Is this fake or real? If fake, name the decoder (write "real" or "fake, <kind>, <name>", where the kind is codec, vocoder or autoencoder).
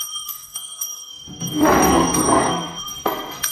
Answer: fake, codec, SNAC